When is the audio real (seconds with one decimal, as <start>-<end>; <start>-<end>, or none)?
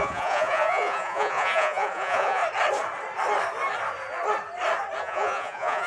2.4-5.0